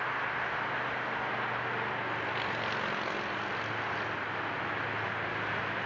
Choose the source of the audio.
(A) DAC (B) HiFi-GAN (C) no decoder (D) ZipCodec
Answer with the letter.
C